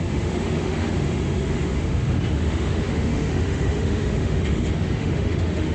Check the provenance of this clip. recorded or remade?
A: remade